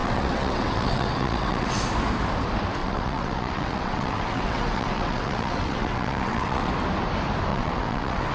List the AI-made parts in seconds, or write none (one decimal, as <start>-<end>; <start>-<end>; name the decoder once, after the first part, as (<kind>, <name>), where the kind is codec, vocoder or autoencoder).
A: 0.0-1.8 (vocoder, WaveNeXt); 2.8-6.7; 7.5-8.3

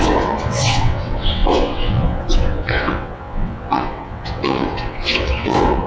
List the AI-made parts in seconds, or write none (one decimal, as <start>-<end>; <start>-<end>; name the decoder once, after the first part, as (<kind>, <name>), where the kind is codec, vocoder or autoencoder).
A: 0.0-5.9 (vocoder, WaveNeXt)

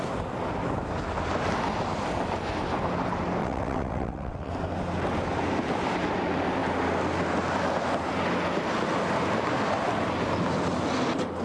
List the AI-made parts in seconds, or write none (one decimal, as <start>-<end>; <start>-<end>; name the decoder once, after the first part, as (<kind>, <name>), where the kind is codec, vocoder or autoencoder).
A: 3.4-4.5 (vocoder, WaveNeXt)

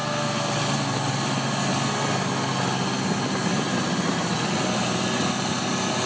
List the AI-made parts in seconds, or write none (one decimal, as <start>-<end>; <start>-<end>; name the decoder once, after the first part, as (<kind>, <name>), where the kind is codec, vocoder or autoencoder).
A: none

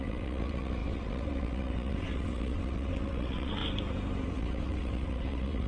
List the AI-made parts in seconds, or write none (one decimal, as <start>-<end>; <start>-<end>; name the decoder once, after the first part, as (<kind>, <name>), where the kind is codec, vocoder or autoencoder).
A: 0.0-3.6 (vocoder, WaveNeXt); 4.3-5.7

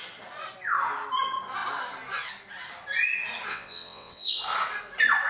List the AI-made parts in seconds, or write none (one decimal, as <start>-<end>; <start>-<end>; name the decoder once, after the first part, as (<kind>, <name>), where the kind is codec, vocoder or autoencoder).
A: 3.5-4.4 (vocoder, WaveNeXt)

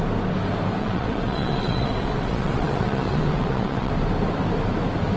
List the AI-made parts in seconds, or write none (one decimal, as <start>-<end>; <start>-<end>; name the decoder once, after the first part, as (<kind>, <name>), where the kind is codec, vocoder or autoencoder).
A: 0.8-3.9 (vocoder, WaveNeXt)